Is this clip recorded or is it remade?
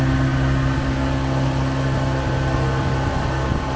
recorded